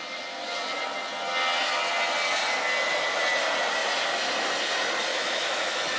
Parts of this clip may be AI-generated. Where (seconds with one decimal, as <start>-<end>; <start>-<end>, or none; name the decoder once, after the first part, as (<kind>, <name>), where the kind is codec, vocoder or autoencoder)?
5.1-6.0 (autoencoder, DAC-VAE)